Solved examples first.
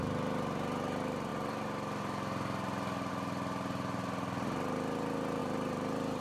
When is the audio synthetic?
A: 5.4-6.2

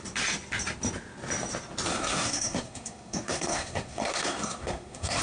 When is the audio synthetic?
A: 1.9-5.2

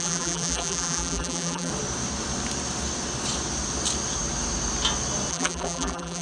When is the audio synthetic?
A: 0.0-1.7; 5.3-6.2

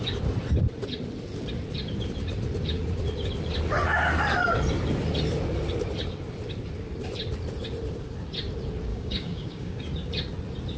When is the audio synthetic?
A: 8.9-9.8

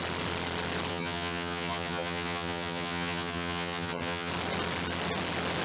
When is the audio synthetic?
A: 0.9-4.3

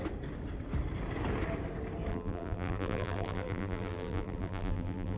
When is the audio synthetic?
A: 2.1-5.2